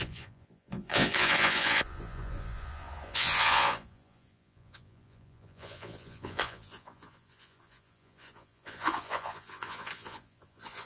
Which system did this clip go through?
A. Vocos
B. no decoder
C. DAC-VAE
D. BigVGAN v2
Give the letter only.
A